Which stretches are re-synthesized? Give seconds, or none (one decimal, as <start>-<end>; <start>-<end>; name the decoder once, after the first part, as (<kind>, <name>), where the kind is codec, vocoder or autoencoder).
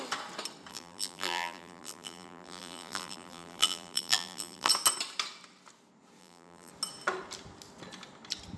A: 0.7-4.7 (vocoder, BigVGAN v2); 6.2-6.7